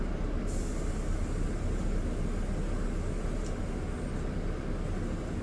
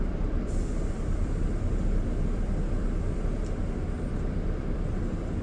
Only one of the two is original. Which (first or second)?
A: first